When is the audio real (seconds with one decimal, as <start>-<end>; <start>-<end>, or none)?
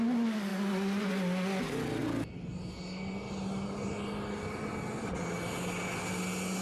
0.0-6.6